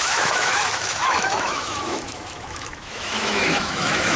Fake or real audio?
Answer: fake